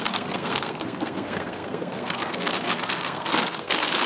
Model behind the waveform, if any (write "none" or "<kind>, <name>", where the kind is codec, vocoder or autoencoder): codec, SNAC